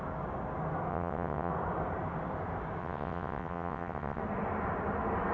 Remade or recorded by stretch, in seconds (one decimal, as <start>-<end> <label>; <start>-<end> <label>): 0.0-0.9 recorded; 0.9-1.5 remade; 1.5-2.8 recorded; 2.8-4.2 remade; 4.2-5.3 recorded